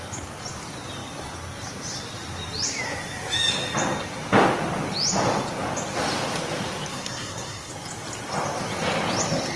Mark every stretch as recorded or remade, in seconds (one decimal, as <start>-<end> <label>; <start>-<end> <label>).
0.0-6.9 recorded; 6.9-7.7 remade; 7.7-9.6 recorded